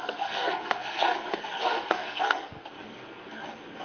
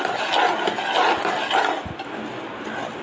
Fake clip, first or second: first